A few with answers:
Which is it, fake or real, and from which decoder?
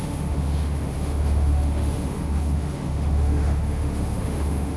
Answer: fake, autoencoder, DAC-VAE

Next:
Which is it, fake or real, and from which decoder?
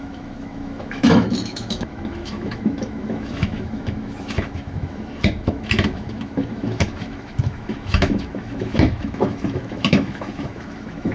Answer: fake, autoencoder, DAC-VAE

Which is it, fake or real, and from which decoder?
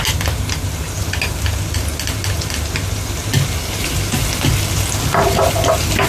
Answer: real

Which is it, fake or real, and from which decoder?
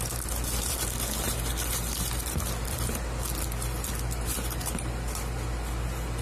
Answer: real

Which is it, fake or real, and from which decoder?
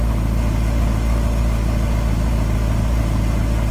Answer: real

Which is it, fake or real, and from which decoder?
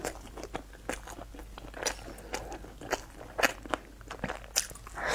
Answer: real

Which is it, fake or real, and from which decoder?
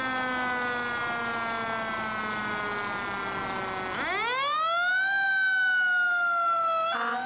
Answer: real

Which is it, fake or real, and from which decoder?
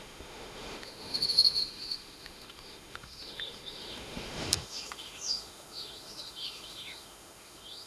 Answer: fake, autoencoder, DAC-VAE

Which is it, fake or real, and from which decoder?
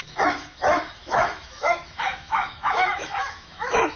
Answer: fake, autoencoder, DAC-VAE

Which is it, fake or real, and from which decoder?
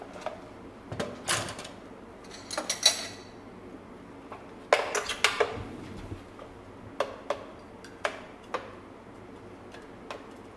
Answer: real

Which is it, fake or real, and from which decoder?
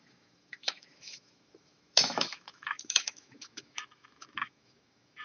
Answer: fake, autoencoder, DAC-VAE